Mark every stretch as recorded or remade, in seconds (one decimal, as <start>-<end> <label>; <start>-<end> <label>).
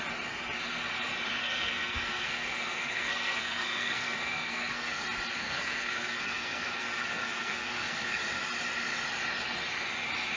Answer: 0.0-1.4 recorded; 1.4-5.0 remade; 5.0-5.4 recorded; 5.4-8.2 remade; 8.2-10.4 recorded